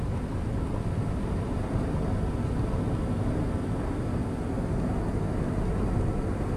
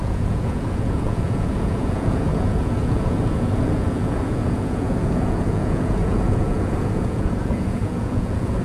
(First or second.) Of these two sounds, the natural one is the first